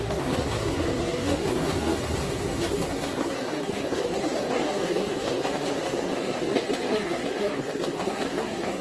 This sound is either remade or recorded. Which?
remade